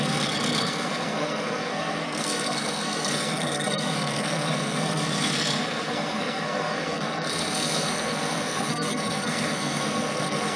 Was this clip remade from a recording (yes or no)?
yes